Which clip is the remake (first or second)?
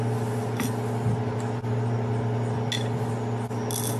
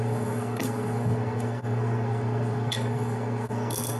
second